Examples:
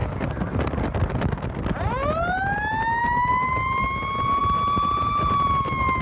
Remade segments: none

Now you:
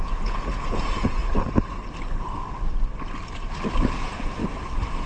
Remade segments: 0.0-1.2 (vocoder, Vocos); 3.9-4.4